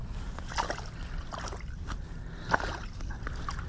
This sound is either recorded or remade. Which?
recorded